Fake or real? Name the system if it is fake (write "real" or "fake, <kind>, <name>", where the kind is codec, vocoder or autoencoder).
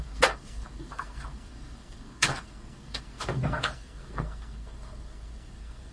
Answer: fake, codec, SNAC